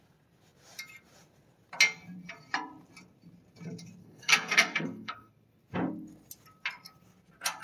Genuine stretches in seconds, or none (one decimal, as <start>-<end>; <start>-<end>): 0.0-4.0; 5.3-7.6